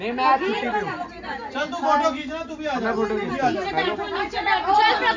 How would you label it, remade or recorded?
recorded